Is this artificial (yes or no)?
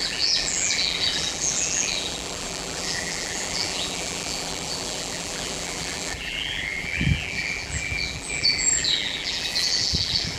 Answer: yes